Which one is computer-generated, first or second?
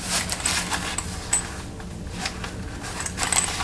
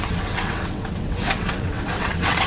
second